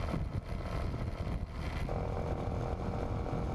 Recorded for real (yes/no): yes